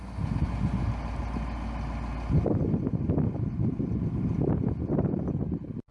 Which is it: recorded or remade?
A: recorded